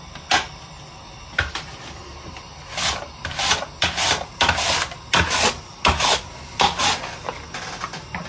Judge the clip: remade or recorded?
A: recorded